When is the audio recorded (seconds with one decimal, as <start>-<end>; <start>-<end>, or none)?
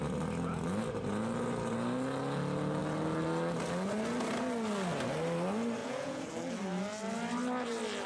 0.0-5.8; 6.3-8.1